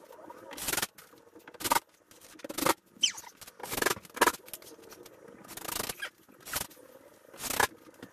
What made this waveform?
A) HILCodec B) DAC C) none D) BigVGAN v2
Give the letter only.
C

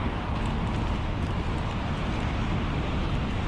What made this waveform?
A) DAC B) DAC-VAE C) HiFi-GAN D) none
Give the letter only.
D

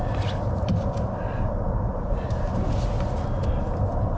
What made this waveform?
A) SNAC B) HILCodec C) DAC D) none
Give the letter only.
D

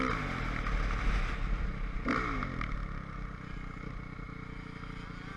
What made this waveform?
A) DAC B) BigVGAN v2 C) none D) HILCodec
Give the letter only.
C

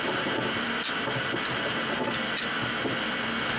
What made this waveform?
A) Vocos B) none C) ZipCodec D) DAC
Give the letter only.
B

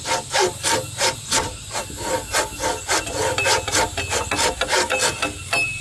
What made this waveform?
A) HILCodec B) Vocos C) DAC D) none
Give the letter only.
D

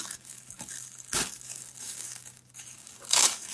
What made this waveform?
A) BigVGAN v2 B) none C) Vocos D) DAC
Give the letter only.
D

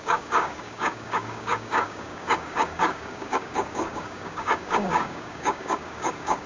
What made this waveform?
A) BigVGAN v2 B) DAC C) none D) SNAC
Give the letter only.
B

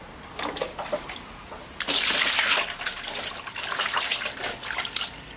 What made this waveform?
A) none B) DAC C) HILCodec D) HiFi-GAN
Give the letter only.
A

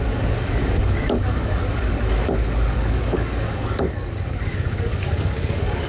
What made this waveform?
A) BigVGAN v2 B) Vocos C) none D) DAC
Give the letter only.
D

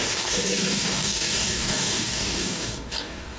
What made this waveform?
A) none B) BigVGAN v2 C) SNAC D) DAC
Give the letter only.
D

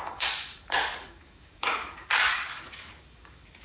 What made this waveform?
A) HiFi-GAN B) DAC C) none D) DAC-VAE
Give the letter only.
B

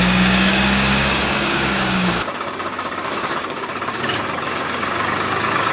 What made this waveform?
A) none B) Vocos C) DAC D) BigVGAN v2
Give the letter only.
C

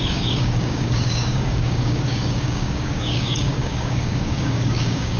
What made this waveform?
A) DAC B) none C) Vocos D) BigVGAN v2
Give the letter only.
A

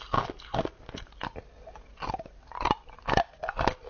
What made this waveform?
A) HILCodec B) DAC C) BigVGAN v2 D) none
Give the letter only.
D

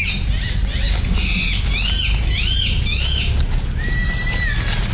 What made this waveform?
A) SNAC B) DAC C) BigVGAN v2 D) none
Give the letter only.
D